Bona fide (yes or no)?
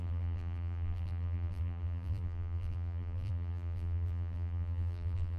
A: no